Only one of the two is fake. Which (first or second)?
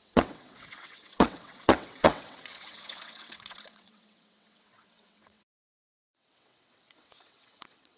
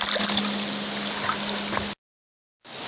first